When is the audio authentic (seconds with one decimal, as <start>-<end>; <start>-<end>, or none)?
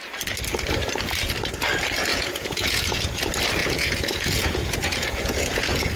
0.0-2.1; 3.2-3.6